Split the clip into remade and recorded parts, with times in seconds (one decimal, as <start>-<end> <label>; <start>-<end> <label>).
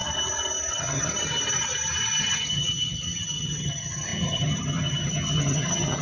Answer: 0.0-0.7 recorded; 0.7-1.1 remade; 1.1-2.2 recorded; 2.2-6.0 remade